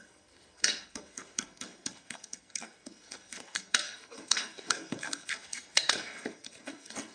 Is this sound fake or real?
fake